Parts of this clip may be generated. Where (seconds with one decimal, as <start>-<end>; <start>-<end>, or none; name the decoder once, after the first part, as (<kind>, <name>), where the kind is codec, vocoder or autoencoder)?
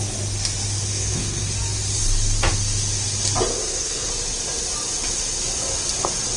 0.9-1.5 (codec, SNAC); 3.5-4.1